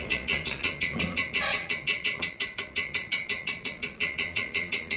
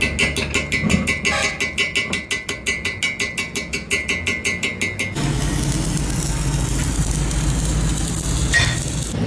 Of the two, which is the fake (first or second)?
first